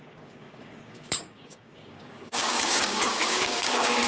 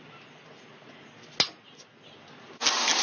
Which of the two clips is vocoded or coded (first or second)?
first